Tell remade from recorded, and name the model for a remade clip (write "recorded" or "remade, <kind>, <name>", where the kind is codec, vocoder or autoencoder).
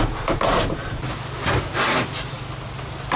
recorded